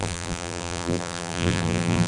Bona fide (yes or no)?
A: no